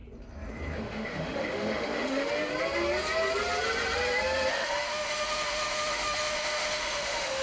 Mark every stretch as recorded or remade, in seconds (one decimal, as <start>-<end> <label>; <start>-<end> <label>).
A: 0.0-0.8 recorded; 0.8-2.5 remade; 2.5-4.5 recorded; 4.5-7.4 remade